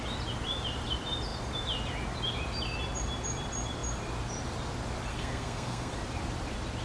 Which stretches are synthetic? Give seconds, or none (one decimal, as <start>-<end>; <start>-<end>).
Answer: 5.1-5.9